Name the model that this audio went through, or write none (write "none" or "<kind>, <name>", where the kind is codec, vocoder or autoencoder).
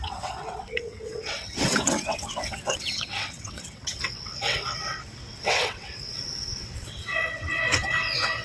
vocoder, WaveNeXt